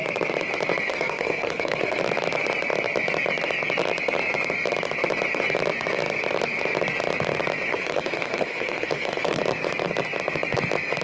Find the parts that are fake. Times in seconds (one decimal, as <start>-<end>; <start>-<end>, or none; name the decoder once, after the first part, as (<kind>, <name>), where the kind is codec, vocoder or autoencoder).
0.9-2.0 (codec, SNAC); 7.7-9.4